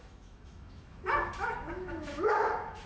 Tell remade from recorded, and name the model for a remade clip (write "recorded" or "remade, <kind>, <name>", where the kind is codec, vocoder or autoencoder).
remade, autoencoder, DAC-VAE